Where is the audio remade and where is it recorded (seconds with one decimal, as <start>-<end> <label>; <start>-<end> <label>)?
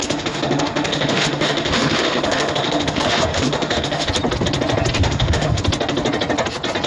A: 0.0-4.1 remade; 4.1-5.0 recorded; 5.0-5.6 remade; 5.6-6.9 recorded